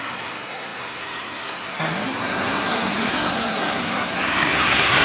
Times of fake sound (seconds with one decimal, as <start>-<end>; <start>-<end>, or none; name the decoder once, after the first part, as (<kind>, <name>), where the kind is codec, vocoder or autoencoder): 0.0-5.0 (codec, SNAC)